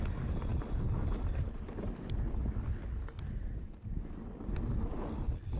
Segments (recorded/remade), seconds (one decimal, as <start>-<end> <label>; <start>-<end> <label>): 0.0-5.6 recorded